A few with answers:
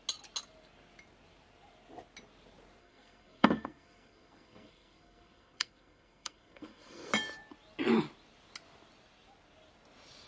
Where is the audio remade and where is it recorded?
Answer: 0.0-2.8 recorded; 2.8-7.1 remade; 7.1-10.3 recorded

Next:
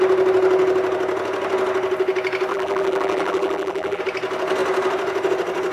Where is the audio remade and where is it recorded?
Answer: 0.0-2.5 recorded; 2.5-4.0 remade; 4.0-5.7 recorded